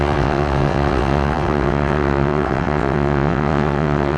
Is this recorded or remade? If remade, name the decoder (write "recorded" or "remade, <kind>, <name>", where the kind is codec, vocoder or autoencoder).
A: remade, vocoder, WaveNeXt